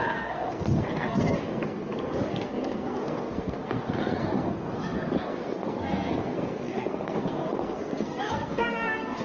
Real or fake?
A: fake